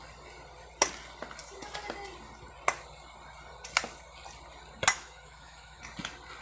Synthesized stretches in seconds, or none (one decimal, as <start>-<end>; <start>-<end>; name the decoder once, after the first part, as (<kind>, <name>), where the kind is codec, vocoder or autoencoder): 4.9-5.8 (autoencoder, DAC-VAE)